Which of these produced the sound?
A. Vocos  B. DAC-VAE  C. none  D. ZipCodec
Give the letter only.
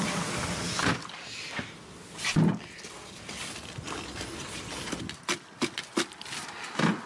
C